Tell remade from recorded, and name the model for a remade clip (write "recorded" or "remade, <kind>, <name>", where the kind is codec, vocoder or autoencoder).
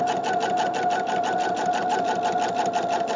recorded